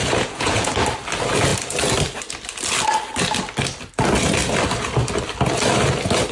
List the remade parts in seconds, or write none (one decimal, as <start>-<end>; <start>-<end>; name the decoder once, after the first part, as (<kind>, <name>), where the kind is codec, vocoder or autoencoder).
0.0-0.7 (vocoder, Vocos)